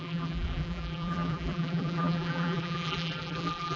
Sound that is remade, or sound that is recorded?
remade